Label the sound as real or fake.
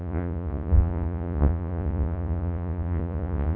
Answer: fake